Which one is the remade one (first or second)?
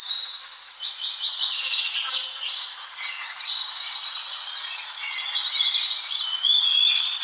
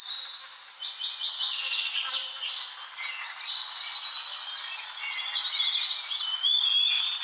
first